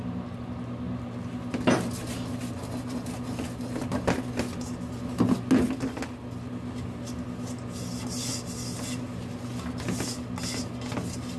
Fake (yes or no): no